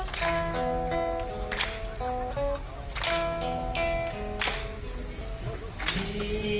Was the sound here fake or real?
real